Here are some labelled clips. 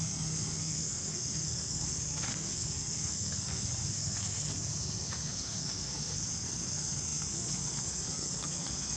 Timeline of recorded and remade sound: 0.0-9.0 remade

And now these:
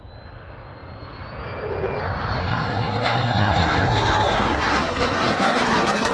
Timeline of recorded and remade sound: 0.0-2.4 recorded; 2.4-6.1 remade

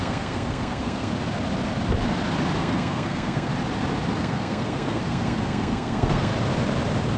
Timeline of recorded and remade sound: 0.0-1.1 remade; 1.1-2.6 recorded; 2.6-3.5 remade; 3.5-4.2 recorded; 4.2-6.3 remade; 6.3-7.2 recorded

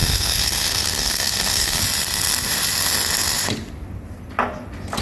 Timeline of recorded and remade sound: 0.0-1.8 remade; 1.8-5.0 recorded

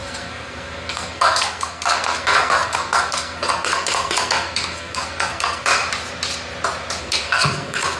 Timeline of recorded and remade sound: 0.0-5.8 remade; 5.8-7.0 recorded; 7.0-8.0 remade

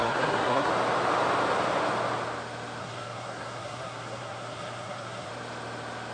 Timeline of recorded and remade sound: 0.0-0.7 remade; 0.7-2.8 recorded; 2.8-5.3 remade; 5.3-6.1 recorded

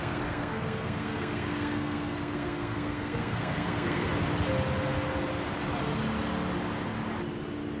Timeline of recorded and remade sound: 0.0-4.1 remade; 4.1-7.8 recorded